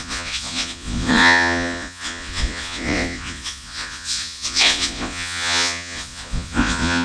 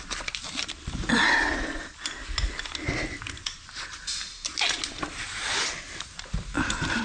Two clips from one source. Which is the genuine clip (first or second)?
second